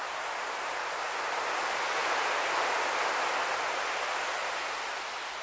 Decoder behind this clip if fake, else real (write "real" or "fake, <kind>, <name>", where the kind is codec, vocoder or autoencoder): real